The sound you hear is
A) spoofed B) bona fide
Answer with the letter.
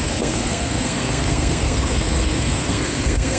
A